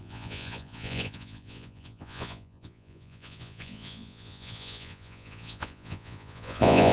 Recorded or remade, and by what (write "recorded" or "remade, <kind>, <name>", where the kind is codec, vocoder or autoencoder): remade, vocoder, Vocos